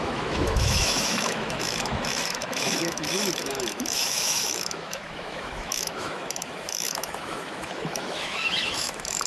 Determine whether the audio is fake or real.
fake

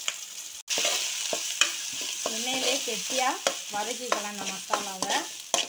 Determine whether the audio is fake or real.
real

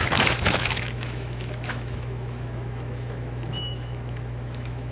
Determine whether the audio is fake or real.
fake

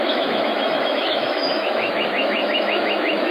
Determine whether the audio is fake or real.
fake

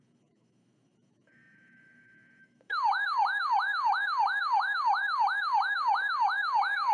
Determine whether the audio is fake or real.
fake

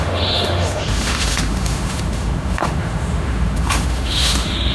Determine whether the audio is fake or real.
fake